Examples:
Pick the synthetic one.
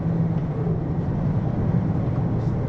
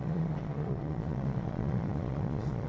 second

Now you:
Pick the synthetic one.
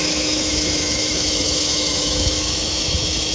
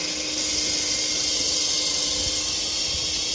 first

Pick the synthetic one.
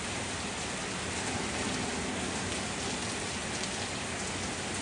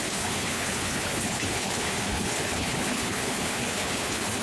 second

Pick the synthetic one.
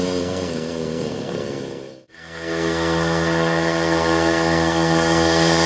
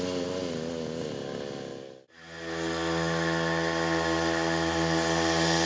first